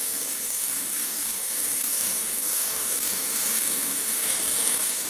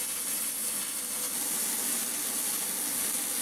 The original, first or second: second